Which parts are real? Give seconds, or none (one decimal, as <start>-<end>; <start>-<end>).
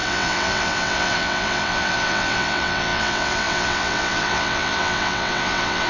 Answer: none